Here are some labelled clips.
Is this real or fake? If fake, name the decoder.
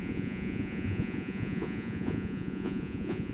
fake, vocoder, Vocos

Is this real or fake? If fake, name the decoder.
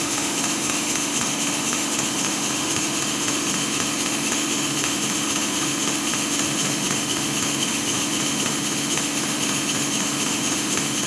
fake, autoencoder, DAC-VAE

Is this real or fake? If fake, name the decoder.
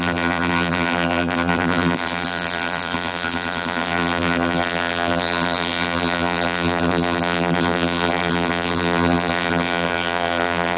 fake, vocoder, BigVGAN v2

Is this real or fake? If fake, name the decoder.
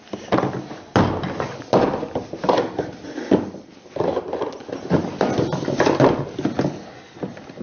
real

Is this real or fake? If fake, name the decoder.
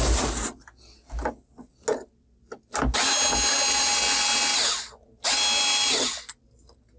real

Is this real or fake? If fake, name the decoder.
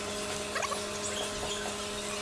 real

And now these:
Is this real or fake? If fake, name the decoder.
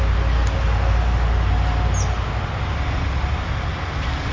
real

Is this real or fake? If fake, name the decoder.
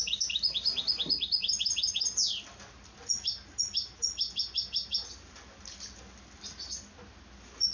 real